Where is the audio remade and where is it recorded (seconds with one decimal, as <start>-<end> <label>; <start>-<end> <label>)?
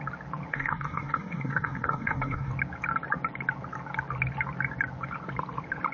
0.0-0.5 recorded; 0.5-2.5 remade; 2.5-5.9 recorded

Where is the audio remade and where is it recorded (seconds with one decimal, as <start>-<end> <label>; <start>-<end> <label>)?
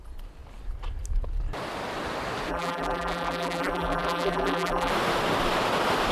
0.0-2.5 recorded; 2.5-4.9 remade; 4.9-6.1 recorded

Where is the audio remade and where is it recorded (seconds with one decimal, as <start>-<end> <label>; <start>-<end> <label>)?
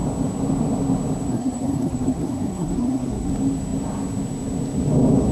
0.0-1.3 recorded; 1.3-3.3 remade; 3.3-5.3 recorded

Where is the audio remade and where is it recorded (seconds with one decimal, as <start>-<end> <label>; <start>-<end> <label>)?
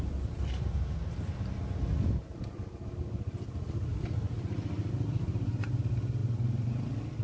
0.0-7.2 recorded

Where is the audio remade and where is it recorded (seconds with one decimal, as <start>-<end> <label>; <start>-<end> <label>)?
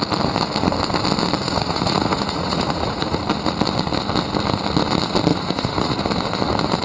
0.0-1.4 recorded; 1.4-3.2 remade; 3.2-5.3 recorded; 5.3-6.0 remade; 6.0-6.8 recorded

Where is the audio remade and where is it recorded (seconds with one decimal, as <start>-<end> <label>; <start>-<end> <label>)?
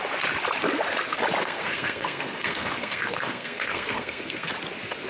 0.0-1.4 recorded; 1.4-4.5 remade; 4.5-5.1 recorded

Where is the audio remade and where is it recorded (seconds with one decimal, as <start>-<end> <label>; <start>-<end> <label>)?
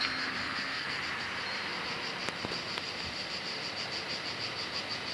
0.0-0.4 recorded; 0.4-1.0 remade; 1.0-5.1 recorded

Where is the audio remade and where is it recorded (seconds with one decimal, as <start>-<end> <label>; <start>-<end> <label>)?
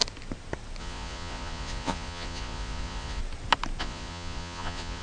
0.0-0.8 recorded; 0.8-3.2 remade; 3.2-3.8 recorded; 3.8-5.0 remade